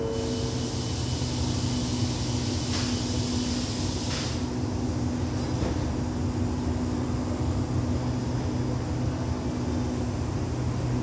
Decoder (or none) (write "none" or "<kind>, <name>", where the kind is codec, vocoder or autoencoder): none